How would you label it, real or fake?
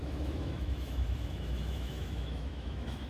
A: fake